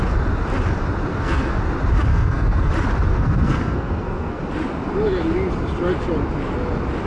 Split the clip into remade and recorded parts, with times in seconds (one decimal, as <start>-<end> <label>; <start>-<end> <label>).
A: 0.0-1.1 recorded; 1.1-1.6 remade; 1.6-2.1 recorded; 2.1-2.7 remade; 2.7-3.1 recorded; 3.1-4.4 remade; 4.4-7.1 recorded